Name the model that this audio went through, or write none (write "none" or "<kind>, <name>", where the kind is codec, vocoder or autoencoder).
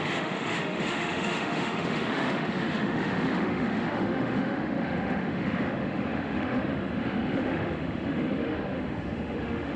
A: autoencoder, DAC-VAE